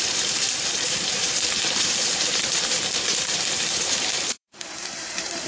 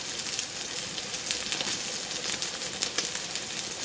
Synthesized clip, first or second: first